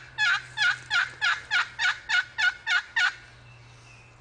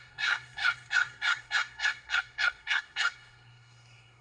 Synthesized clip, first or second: second